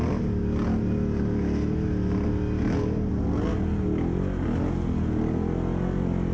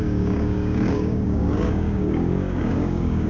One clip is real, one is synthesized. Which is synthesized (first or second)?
second